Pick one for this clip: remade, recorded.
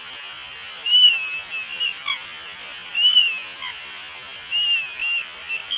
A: recorded